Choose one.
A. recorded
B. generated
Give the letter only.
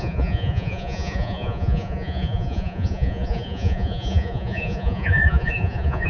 B